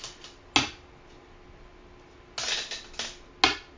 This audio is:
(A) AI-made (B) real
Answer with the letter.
B